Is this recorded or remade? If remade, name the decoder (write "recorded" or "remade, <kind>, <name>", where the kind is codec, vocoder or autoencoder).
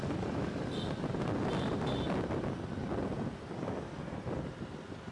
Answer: recorded